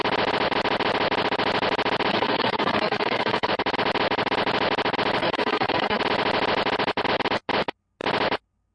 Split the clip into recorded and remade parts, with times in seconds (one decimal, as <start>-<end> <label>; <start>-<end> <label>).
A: 0.0-2.1 recorded; 2.1-3.5 remade; 3.5-5.2 recorded; 5.2-6.0 remade; 6.0-8.7 recorded